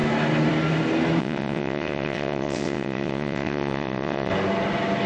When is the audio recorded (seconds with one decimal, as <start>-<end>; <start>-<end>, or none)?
0.0-1.2; 4.3-5.1

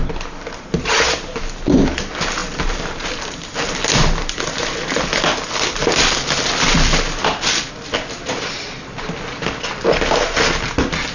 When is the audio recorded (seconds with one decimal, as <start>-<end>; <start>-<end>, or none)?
0.0-2.4; 3.8-11.1

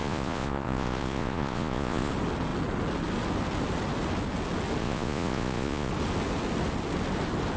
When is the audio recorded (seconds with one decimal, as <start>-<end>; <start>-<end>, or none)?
2.1-4.8; 5.9-7.6